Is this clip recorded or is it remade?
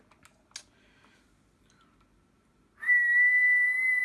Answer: recorded